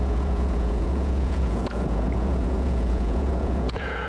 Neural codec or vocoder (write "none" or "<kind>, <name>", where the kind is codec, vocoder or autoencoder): vocoder, Vocos